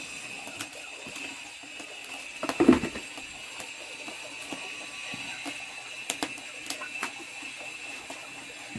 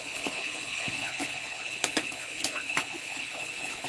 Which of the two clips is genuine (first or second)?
first